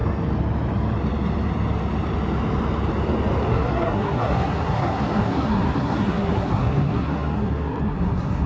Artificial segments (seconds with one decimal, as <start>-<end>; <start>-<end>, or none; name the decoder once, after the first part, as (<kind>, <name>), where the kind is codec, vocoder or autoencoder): 3.5-8.5 (codec, SNAC)